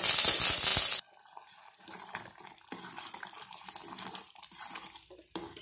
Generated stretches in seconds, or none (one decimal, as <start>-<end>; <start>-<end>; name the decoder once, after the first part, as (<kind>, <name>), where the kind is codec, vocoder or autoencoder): none